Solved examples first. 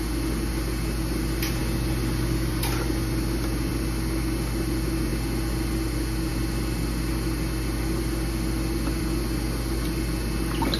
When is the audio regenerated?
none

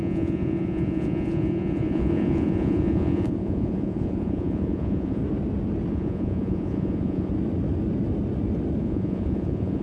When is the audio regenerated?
0.0-5.2 (vocoder, Vocos); 5.9-7.3; 8.8-9.8

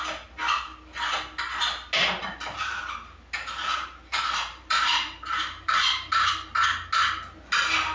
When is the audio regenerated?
2.2-2.8 (vocoder, BigVGAN v2); 3.6-6.3

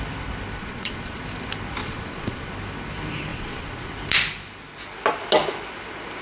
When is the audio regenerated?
0.6-1.2 (vocoder, Vocos); 1.8-2.5; 3.3-3.9

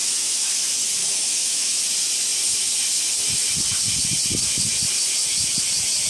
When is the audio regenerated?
0.0-0.5 (autoencoder, DAC-VAE); 1.0-1.8